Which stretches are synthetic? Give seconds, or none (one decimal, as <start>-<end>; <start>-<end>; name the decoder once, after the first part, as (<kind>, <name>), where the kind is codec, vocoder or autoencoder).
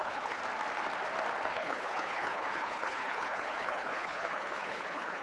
0.0-0.4 (codec, HILCodec); 1.5-5.2